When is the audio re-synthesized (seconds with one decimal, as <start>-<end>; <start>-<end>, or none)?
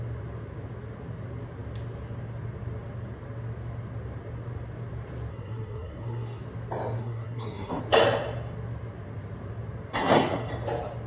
5.3-6.4; 7.0-7.8; 9.9-10.5